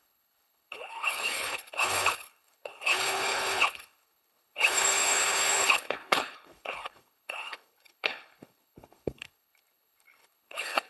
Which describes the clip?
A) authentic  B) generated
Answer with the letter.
B